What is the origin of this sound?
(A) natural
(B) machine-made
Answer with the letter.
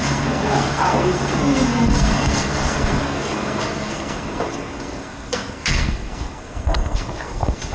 B